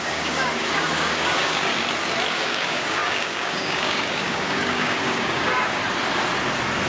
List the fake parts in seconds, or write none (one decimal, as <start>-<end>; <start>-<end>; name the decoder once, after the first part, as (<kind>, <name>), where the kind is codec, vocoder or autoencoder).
0.0-1.7 (codec, DAC); 2.3-5.8